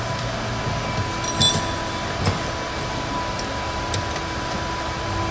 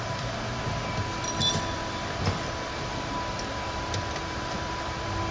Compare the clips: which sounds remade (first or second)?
second